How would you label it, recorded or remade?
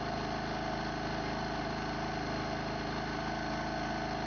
recorded